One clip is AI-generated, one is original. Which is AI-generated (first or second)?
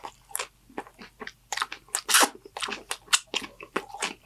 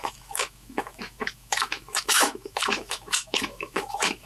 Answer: second